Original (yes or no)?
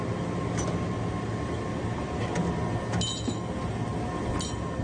yes